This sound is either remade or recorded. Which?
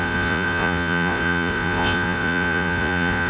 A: remade